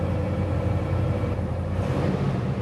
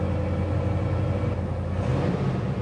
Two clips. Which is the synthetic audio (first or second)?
first